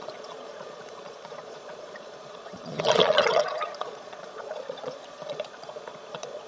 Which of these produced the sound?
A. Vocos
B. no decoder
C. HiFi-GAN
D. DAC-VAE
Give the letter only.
A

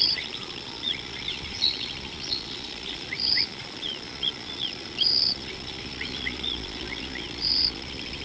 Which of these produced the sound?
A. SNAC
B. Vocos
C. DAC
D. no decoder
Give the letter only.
B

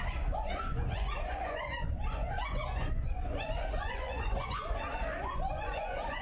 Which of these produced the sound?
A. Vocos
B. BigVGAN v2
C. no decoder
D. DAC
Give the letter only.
A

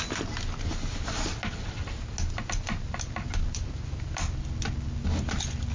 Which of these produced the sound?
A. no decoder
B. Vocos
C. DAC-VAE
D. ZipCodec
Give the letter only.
A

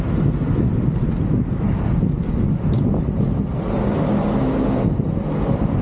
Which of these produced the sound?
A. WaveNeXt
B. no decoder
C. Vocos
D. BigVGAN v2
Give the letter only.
B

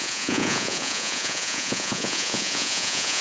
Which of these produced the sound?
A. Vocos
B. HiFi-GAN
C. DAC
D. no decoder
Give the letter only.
A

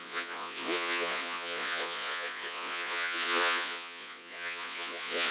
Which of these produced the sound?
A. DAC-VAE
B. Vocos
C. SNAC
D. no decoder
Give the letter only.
B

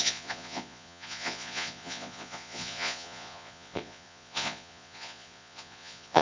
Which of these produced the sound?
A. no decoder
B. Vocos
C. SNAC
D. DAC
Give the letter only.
B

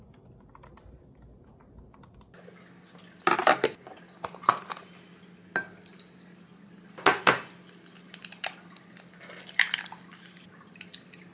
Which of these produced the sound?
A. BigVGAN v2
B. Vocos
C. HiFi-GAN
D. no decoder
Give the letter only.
D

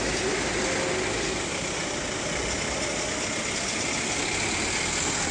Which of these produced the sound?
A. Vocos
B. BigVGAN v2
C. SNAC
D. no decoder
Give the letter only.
D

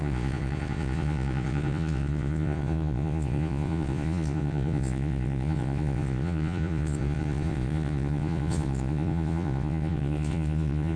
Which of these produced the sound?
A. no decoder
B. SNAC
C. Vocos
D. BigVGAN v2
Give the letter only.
C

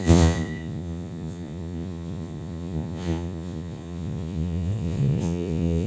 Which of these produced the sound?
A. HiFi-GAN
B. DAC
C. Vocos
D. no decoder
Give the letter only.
C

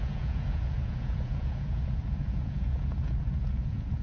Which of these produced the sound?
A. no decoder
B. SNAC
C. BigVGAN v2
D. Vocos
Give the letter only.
D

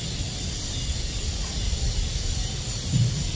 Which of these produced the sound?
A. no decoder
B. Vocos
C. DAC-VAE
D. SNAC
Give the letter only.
A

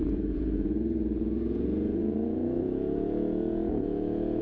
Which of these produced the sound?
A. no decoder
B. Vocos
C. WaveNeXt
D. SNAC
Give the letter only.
B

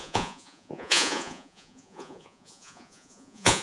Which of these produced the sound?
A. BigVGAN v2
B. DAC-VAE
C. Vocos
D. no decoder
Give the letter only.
C